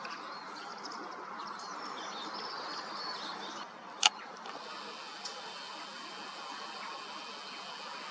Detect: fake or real real